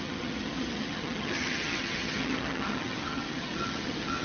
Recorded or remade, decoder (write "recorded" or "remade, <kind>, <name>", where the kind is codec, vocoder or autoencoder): remade, vocoder, HiFi-GAN